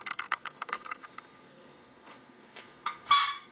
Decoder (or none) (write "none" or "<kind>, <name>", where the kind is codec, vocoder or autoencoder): codec, SNAC